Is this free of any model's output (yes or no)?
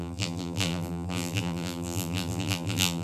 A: no